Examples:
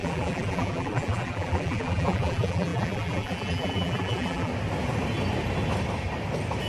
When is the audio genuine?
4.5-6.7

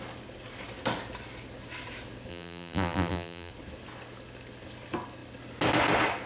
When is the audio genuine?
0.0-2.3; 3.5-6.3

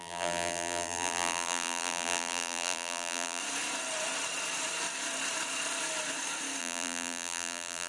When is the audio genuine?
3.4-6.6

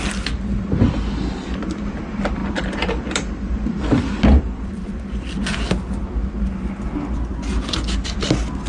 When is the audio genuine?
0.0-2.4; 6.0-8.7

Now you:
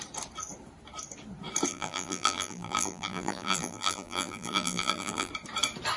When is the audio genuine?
0.0-1.7; 5.3-6.0

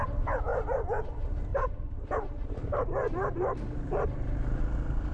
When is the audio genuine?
0.0-0.5; 1.0-1.5; 4.6-5.1

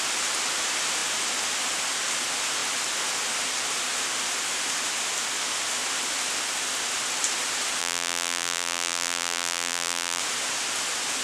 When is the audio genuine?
0.0-7.8; 10.2-11.2